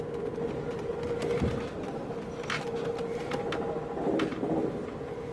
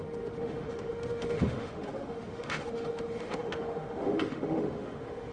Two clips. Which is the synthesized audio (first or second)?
second